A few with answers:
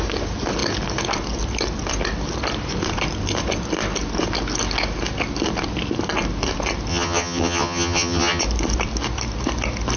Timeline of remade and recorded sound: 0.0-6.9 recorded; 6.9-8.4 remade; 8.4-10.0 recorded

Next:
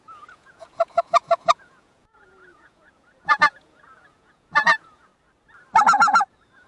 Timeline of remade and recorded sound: 0.0-5.1 remade; 5.1-6.3 recorded; 6.3-6.7 remade

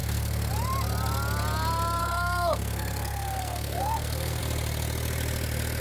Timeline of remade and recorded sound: 0.0-0.5 remade; 0.5-2.0 recorded; 2.0-4.4 remade; 4.4-5.8 recorded

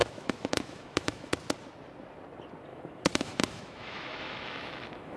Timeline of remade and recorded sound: 0.0-1.3 remade; 1.3-2.7 recorded; 2.7-5.2 remade

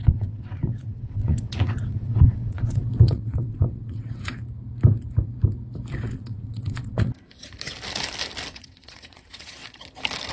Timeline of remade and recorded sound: 0.0-4.4 remade; 4.4-5.9 recorded; 5.9-7.1 remade; 7.1-8.5 recorded; 8.5-9.6 remade; 9.6-10.3 recorded

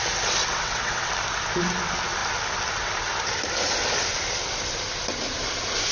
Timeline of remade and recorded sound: 0.0-0.4 recorded; 0.4-1.1 remade; 1.1-5.9 recorded

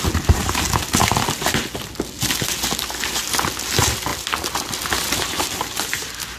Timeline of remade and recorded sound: 0.0-6.4 recorded

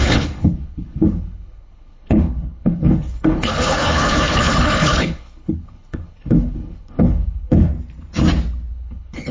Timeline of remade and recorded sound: 0.0-7.7 remade; 7.7-8.7 recorded; 8.7-9.3 remade